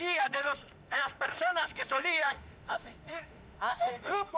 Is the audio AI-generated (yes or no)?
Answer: yes